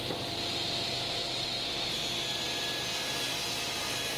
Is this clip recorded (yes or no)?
yes